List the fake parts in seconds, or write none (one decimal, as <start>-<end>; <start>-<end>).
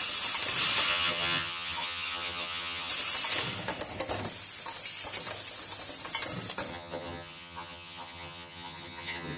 0.9-2.9; 6.7-9.4